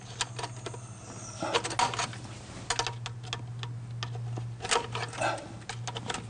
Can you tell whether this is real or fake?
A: real